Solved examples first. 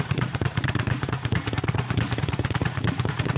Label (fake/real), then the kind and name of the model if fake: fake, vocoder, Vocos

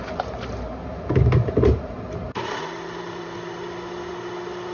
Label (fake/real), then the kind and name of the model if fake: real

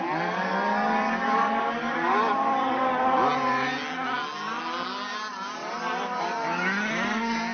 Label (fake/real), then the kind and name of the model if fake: real